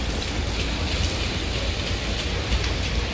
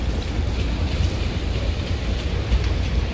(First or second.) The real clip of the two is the first